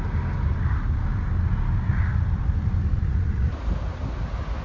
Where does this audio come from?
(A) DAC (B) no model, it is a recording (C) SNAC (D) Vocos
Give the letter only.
B